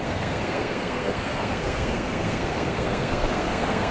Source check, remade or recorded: remade